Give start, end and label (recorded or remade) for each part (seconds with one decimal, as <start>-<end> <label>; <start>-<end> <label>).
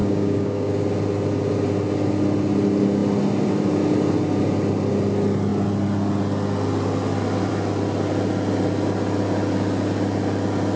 0.0-0.7 remade; 0.7-10.8 recorded